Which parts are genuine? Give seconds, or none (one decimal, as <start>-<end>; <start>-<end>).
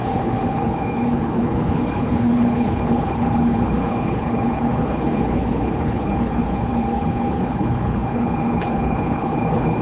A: none